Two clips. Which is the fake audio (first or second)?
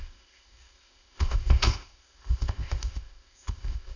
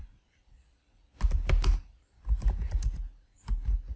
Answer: first